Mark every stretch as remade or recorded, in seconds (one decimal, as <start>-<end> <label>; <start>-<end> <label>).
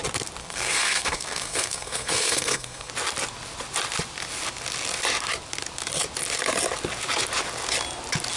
0.0-0.4 recorded; 0.4-2.9 remade; 2.9-8.4 recorded